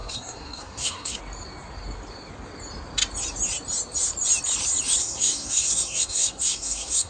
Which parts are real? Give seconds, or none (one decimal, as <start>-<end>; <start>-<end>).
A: 1.2-5.0